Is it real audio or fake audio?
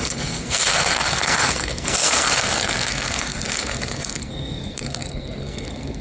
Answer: fake